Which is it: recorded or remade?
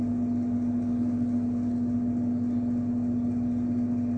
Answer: recorded